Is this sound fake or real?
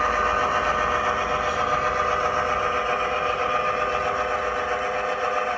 real